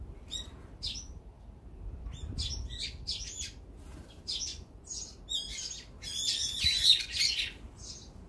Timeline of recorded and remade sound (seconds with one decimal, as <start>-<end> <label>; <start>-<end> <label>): 0.0-4.5 recorded; 4.5-5.0 remade; 5.0-6.4 recorded; 6.4-7.4 remade; 7.4-8.3 recorded